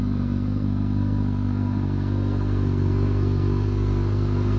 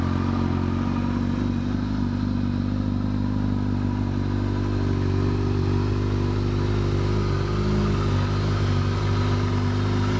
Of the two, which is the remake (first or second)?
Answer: first